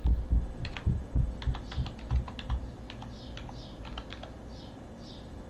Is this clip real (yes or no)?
yes